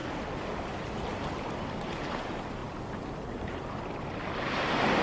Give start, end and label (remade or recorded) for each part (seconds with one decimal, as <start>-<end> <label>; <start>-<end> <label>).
0.0-1.3 remade; 1.3-2.6 recorded; 2.6-3.8 remade; 3.8-5.0 recorded